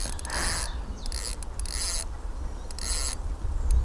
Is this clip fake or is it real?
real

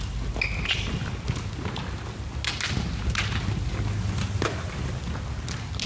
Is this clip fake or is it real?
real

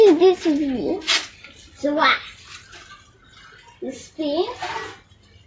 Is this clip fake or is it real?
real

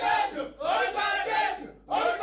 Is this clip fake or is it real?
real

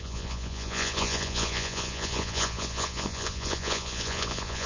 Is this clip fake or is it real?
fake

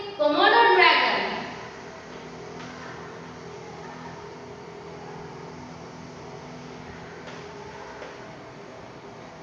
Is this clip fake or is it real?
real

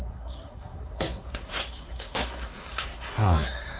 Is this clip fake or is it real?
fake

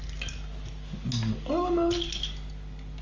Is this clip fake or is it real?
real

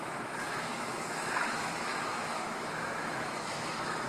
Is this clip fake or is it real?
fake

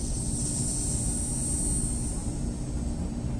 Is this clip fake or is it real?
real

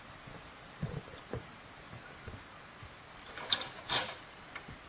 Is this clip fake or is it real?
real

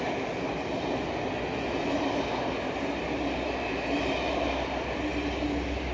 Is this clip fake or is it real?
real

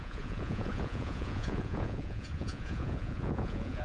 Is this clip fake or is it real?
fake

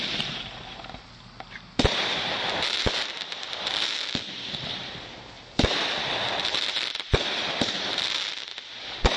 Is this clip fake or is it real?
real